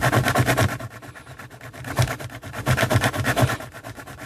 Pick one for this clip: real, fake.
real